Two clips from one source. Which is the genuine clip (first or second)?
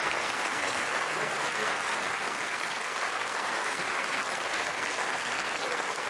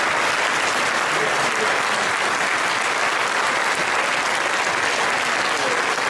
second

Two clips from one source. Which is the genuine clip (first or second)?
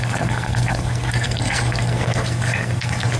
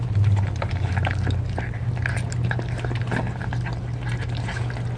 second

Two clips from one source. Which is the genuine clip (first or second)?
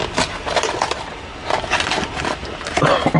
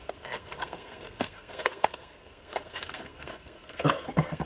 first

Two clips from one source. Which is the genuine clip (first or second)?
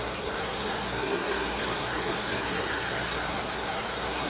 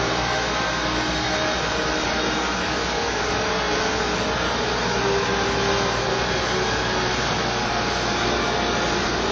second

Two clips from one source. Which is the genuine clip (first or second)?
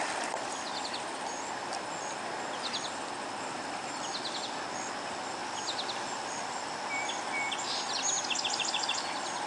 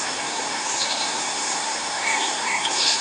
first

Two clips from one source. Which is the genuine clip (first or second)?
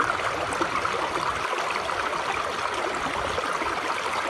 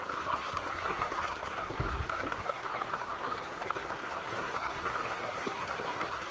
first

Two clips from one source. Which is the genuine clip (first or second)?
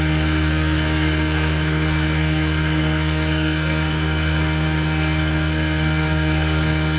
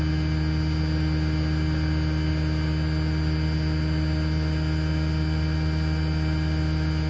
second